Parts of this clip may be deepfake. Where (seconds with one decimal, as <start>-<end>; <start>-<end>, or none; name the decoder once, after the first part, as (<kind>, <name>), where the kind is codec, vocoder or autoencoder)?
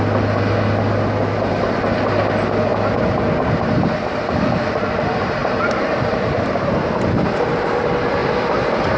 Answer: 5.4-7.7 (vocoder, BigVGAN v2); 8.2-9.0